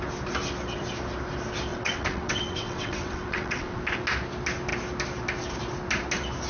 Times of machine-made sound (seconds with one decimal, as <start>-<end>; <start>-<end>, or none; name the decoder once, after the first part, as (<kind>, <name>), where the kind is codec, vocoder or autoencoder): 1.7-3.8 (vocoder, WaveNeXt)